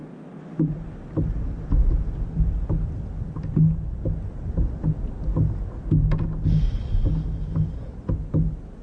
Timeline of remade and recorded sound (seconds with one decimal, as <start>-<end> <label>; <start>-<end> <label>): 0.0-8.8 recorded

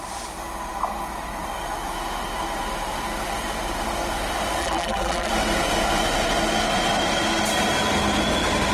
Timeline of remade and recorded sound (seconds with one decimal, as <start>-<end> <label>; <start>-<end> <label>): 0.0-4.6 recorded; 4.6-5.3 remade; 5.3-8.7 recorded

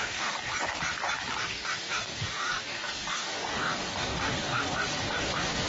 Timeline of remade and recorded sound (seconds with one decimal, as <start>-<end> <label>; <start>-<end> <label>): 0.0-0.5 remade; 0.5-1.4 recorded; 1.4-5.7 remade

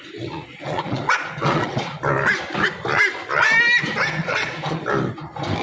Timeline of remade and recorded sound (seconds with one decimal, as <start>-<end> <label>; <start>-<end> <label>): 0.0-0.4 recorded; 0.4-1.9 remade; 1.9-4.2 recorded; 4.2-4.8 remade; 4.8-5.6 recorded

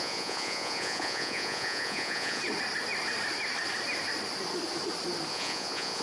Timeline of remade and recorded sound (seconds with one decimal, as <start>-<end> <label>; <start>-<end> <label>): 0.0-2.4 remade; 2.4-5.3 recorded; 5.3-6.0 remade